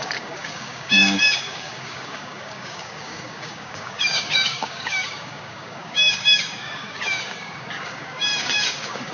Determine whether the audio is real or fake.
fake